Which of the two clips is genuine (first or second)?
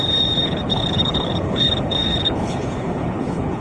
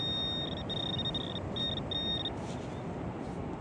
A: second